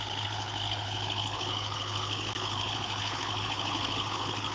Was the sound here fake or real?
fake